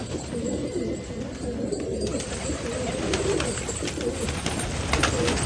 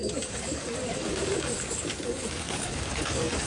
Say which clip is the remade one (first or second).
second